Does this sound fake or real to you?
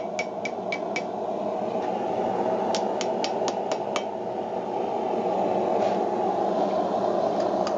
real